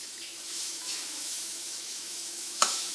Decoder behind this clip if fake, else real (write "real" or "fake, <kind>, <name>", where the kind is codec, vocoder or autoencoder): fake, autoencoder, DAC-VAE